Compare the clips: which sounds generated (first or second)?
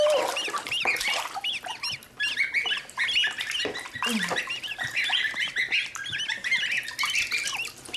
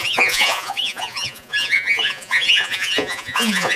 second